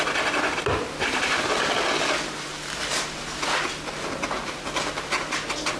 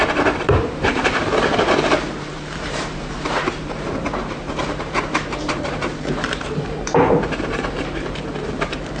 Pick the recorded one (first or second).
first